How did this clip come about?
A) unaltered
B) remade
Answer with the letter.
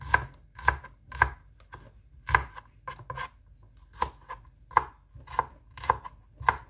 A